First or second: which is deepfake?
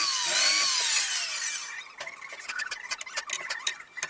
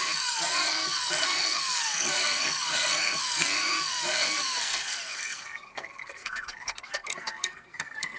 second